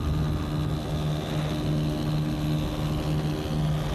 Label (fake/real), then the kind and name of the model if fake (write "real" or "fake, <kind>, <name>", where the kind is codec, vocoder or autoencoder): real